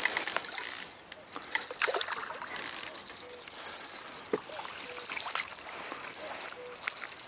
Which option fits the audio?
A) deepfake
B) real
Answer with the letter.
B